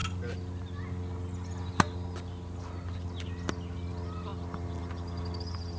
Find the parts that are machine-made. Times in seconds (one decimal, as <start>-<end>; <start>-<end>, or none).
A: none